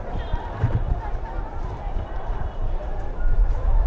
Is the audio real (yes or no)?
no